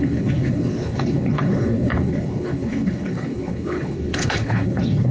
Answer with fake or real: fake